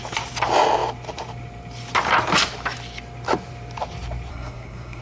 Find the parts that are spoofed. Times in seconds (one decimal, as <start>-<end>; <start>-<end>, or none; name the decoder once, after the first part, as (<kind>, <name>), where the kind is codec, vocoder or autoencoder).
4.3-5.0 (codec, SNAC)

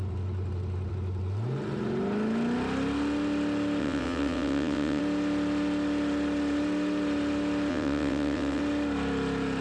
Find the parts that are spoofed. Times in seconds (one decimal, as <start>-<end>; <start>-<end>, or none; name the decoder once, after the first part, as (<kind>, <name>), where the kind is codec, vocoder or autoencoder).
3.8-5.0 (vocoder, WaveNeXt); 7.7-8.6

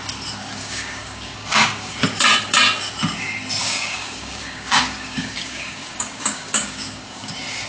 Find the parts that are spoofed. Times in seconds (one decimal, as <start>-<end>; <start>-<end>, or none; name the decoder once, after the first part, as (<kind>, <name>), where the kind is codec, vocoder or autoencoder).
0.6-2.0 (codec, DAC); 3.6-7.3